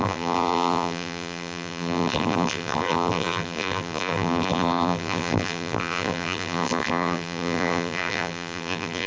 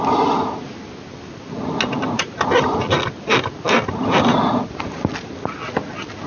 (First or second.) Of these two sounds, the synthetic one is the first